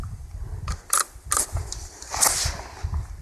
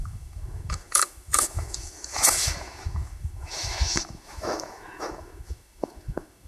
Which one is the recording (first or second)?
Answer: first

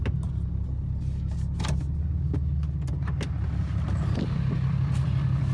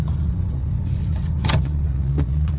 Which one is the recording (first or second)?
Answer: first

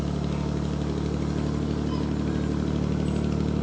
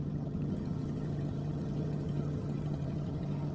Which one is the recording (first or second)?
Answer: first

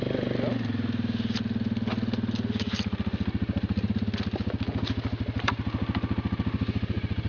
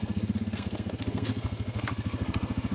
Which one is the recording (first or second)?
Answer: first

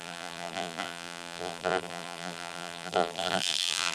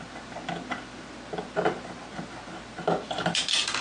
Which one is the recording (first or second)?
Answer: second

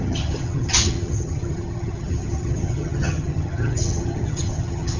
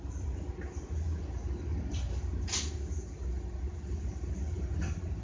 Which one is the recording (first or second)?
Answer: second